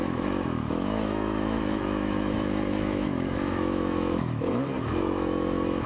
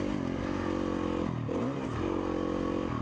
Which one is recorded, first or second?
second